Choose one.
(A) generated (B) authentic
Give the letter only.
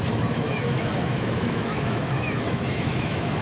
A